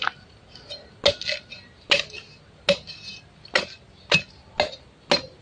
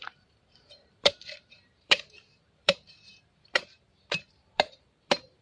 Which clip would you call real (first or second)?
first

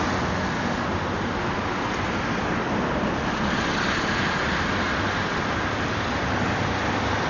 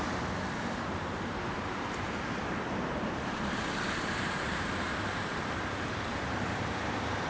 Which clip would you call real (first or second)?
first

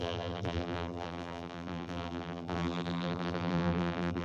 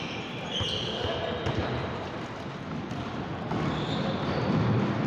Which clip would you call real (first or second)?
second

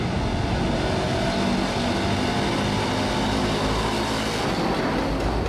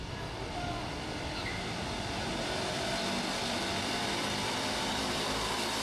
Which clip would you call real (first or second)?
first